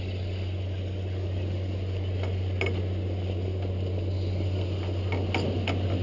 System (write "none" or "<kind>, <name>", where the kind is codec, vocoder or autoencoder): none